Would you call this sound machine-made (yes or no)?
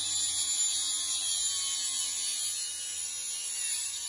no